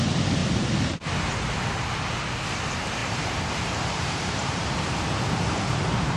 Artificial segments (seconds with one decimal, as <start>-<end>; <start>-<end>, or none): 3.0-6.2

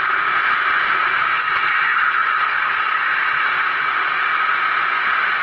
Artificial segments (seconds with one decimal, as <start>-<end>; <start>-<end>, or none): 0.0-3.1; 3.8-5.4

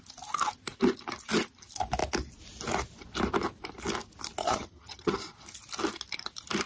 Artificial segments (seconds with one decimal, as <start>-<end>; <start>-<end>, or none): 4.4-5.2

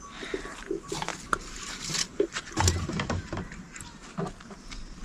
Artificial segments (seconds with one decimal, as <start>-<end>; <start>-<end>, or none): none

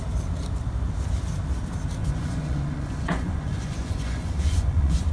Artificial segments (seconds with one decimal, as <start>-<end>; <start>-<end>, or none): 2.0-5.1

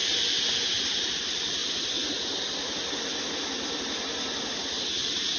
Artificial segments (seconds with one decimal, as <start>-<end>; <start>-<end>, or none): none